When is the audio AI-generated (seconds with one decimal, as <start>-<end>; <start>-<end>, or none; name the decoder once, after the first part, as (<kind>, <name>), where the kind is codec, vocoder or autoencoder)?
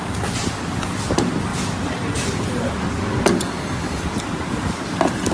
none